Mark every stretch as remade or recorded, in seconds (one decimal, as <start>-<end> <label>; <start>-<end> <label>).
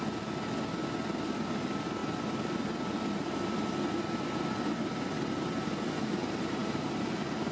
0.0-7.5 recorded